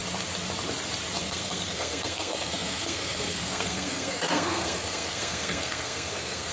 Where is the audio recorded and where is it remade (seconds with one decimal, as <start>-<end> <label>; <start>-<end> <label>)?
0.0-1.2 recorded; 1.2-6.5 remade